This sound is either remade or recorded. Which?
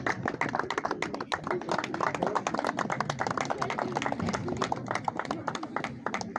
recorded